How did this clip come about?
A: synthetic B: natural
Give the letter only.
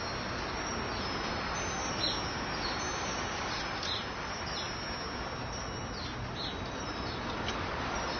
B